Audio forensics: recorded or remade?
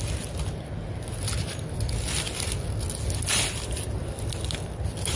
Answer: recorded